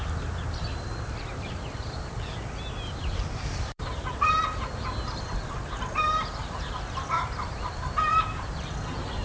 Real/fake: fake